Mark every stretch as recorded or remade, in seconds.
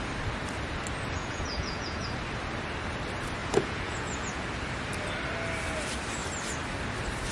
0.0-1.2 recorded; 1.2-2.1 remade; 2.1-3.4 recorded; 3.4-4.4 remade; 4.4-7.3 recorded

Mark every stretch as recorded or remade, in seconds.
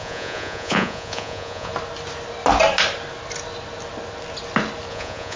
0.0-1.7 remade; 1.7-4.9 recorded; 4.9-5.4 remade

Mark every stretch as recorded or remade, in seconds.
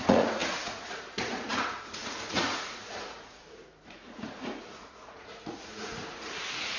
0.0-6.8 remade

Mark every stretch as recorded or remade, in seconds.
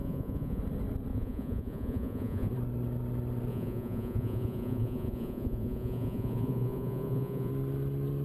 0.0-0.6 remade; 0.6-1.1 recorded; 1.1-2.5 remade; 2.5-3.5 recorded; 3.5-7.5 remade; 7.5-8.2 recorded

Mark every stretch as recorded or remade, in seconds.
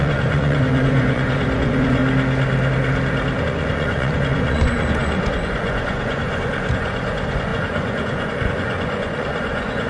0.0-2.0 remade; 2.0-3.4 recorded; 3.4-9.9 remade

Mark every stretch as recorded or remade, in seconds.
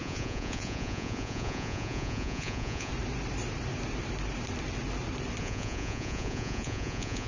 0.0-2.9 remade; 2.9-5.4 recorded; 5.4-7.3 remade